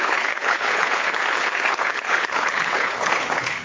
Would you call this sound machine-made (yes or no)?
yes